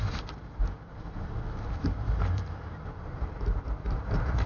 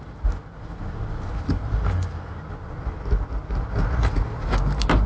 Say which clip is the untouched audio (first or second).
second